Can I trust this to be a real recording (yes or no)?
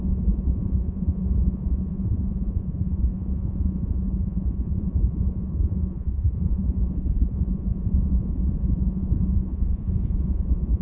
no